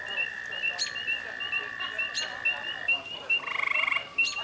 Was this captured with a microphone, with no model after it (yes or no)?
yes